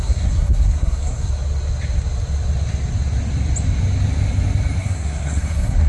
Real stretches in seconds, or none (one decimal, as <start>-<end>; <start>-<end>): 1.3-4.8